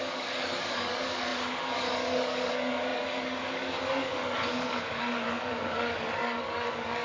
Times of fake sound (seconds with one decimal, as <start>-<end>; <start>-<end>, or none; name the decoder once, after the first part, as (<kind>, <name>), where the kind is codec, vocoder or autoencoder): 0.0-7.0 (codec, DAC)